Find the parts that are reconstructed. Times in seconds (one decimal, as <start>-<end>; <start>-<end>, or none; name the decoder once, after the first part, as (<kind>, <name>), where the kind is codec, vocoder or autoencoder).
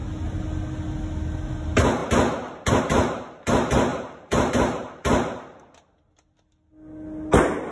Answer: 3.9-4.5 (vocoder, BigVGAN v2)